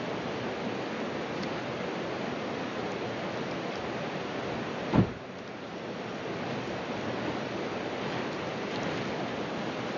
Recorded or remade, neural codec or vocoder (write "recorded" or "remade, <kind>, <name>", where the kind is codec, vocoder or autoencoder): recorded